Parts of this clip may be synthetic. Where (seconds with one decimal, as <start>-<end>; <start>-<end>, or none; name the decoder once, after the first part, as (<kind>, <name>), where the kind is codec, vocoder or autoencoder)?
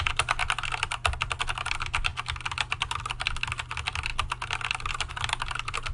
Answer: none